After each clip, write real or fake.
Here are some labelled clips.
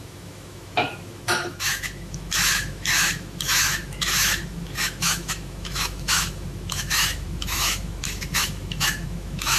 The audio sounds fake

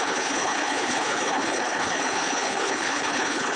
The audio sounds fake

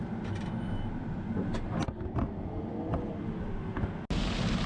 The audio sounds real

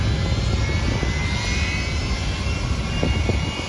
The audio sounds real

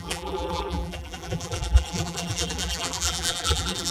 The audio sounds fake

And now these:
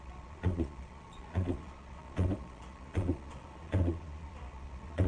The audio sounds fake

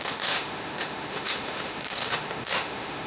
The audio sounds fake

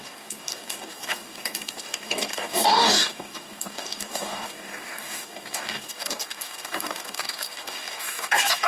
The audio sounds fake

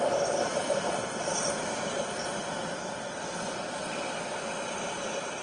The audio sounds real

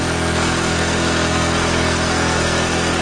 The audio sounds fake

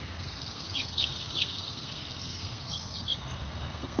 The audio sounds fake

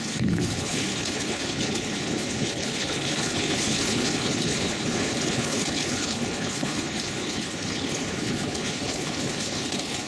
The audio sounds fake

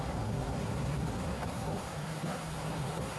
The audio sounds fake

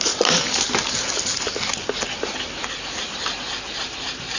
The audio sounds real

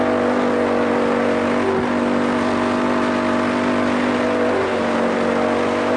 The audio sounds real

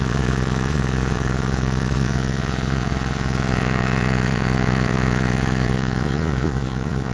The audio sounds fake